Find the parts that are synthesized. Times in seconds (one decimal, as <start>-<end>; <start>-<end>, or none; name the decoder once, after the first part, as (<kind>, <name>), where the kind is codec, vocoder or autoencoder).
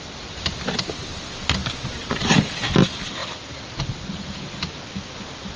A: 1.6-2.7 (vocoder, BigVGAN v2); 3.2-4.8